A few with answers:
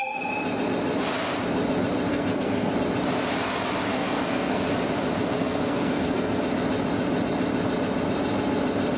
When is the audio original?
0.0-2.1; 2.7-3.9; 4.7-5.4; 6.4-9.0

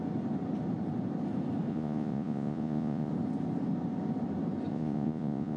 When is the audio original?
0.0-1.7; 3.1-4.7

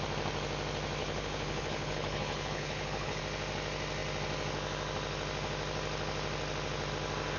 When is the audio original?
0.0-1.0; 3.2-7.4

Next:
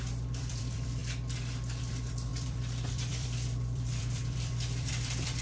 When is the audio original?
1.0-1.8